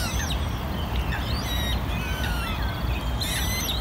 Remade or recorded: recorded